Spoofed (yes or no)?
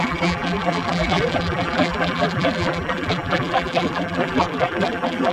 yes